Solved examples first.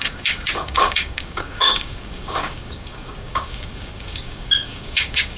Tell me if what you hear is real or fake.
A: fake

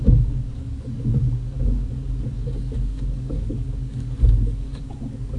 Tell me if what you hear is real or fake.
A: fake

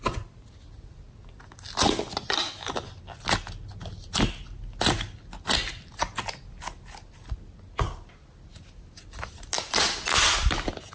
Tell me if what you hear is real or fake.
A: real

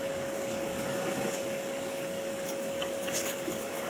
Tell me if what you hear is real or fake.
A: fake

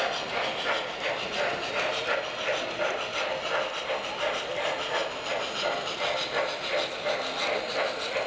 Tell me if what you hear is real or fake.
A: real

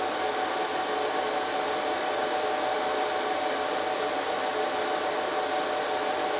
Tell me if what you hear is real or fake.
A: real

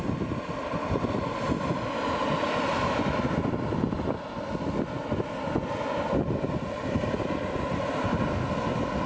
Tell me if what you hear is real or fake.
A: real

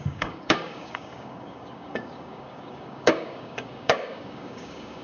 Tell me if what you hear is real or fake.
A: fake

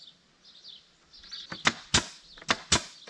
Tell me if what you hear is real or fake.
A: real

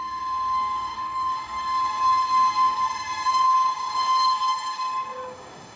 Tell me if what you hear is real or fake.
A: fake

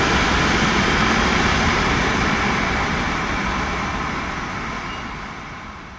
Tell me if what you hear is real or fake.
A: real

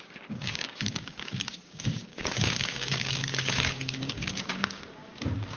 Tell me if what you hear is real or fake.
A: fake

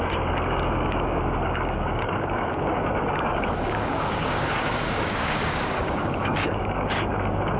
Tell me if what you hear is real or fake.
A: fake